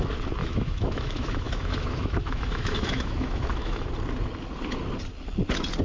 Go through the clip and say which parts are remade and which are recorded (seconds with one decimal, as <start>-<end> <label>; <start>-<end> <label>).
0.0-0.4 recorded; 0.4-3.9 remade; 3.9-5.8 recorded

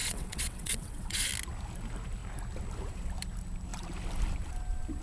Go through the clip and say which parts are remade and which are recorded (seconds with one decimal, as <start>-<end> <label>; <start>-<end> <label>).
0.0-1.3 remade; 1.3-5.0 recorded